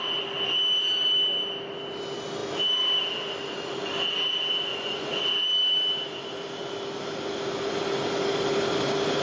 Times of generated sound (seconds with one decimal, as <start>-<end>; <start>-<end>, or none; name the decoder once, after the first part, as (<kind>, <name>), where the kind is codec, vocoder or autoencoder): 4.7-5.2 (vocoder, Vocos)